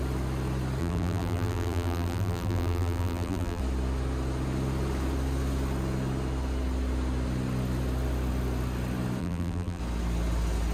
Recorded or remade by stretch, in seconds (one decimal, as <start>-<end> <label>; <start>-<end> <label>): 0.0-0.8 recorded; 0.8-3.6 remade; 3.6-9.2 recorded; 9.2-9.8 remade; 9.8-10.7 recorded